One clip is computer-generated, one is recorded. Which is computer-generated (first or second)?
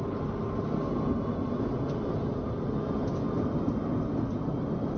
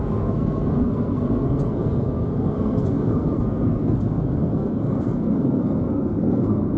second